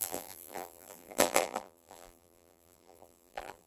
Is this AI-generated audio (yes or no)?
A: yes